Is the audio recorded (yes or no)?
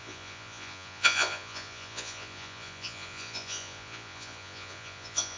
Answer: no